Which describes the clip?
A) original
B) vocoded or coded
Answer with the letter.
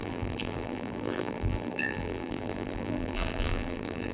B